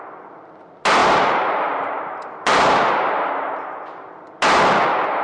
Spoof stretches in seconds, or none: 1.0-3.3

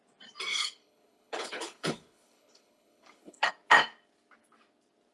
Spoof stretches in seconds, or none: 0.5-3.5

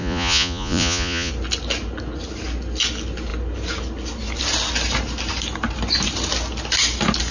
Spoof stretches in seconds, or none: 0.0-1.3

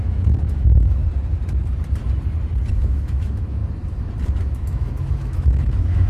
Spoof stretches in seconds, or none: 0.0-1.0; 2.7-3.6; 4.4-6.1

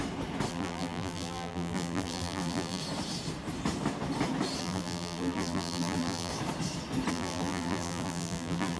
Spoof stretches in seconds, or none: 0.5-2.8; 4.6-6.3; 7.1-8.8